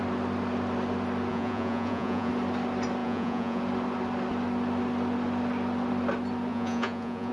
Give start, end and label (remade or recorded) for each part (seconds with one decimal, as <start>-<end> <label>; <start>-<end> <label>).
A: 0.0-1.3 recorded; 1.3-2.3 remade; 2.3-3.0 recorded; 3.0-3.6 remade; 3.6-6.5 recorded; 6.5-7.3 remade